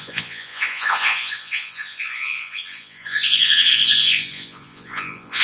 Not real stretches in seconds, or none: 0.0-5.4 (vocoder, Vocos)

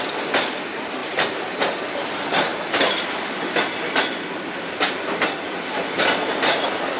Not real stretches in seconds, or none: none

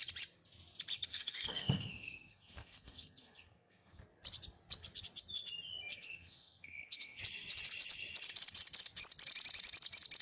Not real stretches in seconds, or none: 1.1-4.0 (codec, SNAC); 5.9-7.2